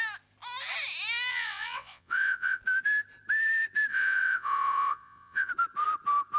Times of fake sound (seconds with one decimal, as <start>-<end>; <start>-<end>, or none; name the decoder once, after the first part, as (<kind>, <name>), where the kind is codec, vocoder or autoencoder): 1.3-2.6 (vocoder, WaveNeXt); 3.9-5.5